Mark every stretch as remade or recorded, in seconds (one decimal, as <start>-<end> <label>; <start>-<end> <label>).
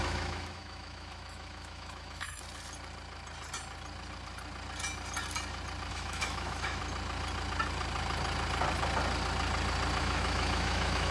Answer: 0.0-2.4 remade; 2.4-5.9 recorded; 5.9-6.8 remade; 6.8-10.0 recorded; 10.0-11.1 remade